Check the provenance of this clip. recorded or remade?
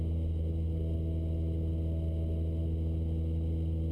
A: recorded